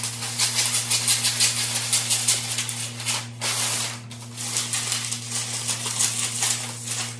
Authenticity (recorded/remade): recorded